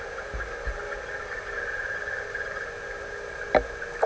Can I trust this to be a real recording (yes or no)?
yes